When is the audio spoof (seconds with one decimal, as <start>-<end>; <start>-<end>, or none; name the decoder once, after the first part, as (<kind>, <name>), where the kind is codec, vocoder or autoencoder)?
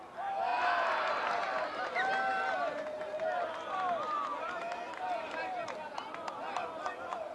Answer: none